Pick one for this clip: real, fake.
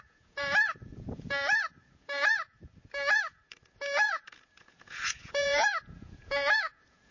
fake